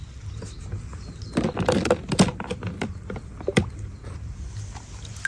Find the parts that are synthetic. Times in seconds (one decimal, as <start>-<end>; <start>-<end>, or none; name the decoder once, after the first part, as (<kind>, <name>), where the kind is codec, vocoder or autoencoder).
2.0-4.8 (vocoder, BigVGAN v2)